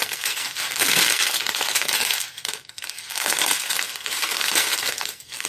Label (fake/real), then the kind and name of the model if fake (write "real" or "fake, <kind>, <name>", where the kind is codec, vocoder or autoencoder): fake, codec, SNAC